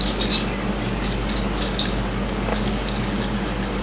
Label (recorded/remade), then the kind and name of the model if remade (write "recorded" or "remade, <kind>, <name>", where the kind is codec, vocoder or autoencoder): remade, codec, DAC